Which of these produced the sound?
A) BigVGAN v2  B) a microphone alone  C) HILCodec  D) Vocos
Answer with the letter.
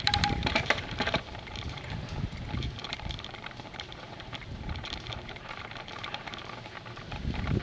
A